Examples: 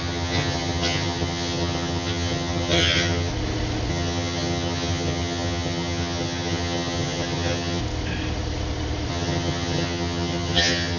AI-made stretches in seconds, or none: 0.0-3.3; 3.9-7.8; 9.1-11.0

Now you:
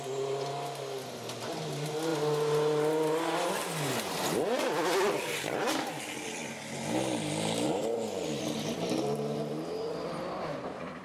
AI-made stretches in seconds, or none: none

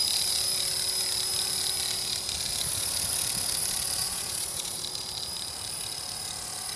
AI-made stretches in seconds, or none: 4.0-4.8